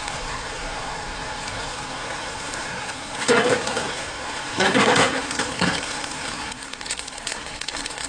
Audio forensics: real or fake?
fake